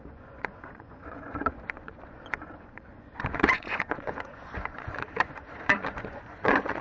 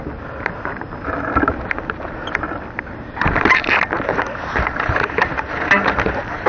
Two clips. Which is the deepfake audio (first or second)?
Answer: first